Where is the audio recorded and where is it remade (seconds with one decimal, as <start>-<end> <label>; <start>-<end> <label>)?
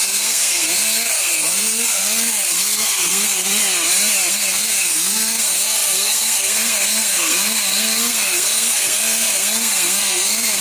0.0-3.5 remade; 3.5-4.3 recorded; 4.3-10.6 remade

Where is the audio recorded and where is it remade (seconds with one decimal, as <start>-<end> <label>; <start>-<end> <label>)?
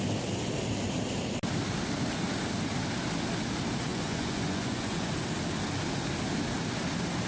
0.0-3.9 recorded; 3.9-5.1 remade; 5.1-7.3 recorded